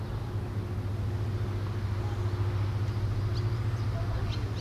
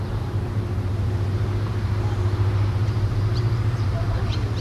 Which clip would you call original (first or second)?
first